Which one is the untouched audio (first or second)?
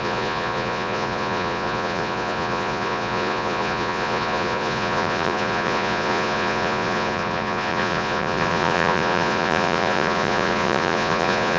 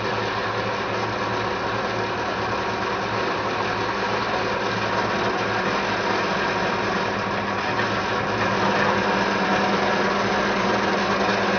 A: second